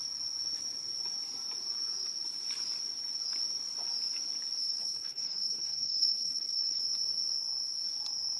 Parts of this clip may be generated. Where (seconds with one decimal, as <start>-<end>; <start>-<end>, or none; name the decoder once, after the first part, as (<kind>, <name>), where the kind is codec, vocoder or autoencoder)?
4.6-6.8 (codec, HILCodec)